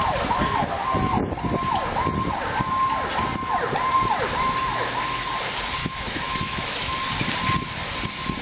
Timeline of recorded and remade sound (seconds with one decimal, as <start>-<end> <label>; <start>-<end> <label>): 0.0-5.8 recorded; 5.8-6.9 remade; 6.9-8.4 recorded

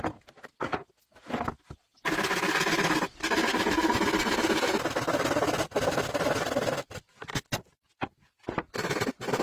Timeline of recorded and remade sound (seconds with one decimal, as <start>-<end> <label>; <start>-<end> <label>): 0.0-9.4 recorded

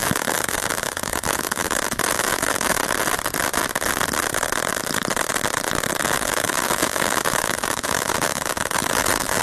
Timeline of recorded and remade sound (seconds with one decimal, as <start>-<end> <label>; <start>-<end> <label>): 0.0-2.8 remade; 2.8-6.0 recorded; 6.0-9.4 remade